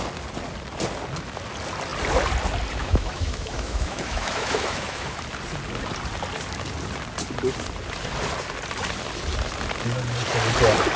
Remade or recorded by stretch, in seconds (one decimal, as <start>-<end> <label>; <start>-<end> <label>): 0.0-2.8 recorded; 2.8-5.2 remade; 5.2-11.0 recorded